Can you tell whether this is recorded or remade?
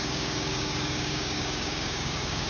remade